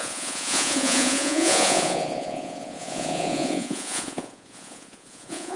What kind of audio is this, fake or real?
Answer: fake